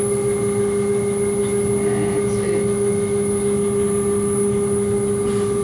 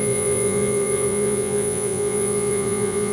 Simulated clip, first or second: second